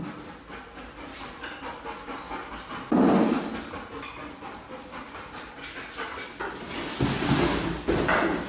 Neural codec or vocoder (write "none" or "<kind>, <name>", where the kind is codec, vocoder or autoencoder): none